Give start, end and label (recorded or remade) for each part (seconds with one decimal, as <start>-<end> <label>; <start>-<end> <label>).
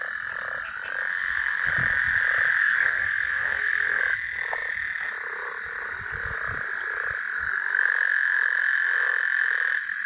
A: 0.0-1.1 recorded; 1.1-1.7 remade; 1.7-2.6 recorded; 2.6-4.0 remade; 4.0-10.1 recorded